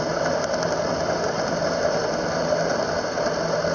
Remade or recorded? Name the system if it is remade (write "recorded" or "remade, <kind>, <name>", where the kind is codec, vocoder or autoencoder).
recorded